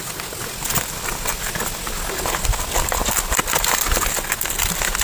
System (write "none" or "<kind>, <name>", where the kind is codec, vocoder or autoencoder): none